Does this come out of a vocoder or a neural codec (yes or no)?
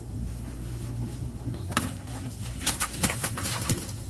yes